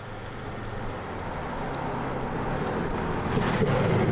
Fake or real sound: real